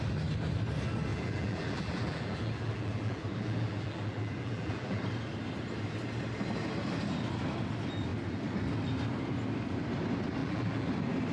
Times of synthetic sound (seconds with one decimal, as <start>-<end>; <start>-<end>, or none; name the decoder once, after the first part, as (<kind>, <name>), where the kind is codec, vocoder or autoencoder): 1.1-5.0 (vocoder, BigVGAN v2); 10.4-10.9

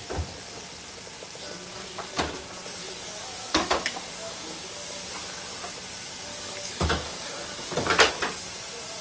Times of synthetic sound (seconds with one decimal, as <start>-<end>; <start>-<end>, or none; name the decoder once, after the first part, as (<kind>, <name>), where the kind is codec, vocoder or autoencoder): 1.7-2.2 (codec, DAC); 2.8-5.0; 6.3-8.1

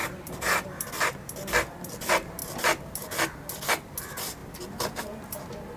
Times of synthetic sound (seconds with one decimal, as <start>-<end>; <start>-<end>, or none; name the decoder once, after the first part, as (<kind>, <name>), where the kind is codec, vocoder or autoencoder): 0.0-0.9 (vocoder, BigVGAN v2)